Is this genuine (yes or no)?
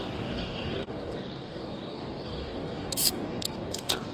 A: no